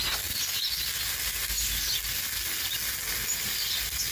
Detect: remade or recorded recorded